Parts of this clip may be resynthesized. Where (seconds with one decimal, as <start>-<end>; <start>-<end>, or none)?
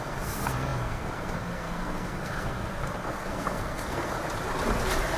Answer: 0.0-4.2